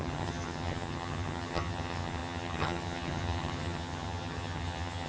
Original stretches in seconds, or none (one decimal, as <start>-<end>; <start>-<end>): none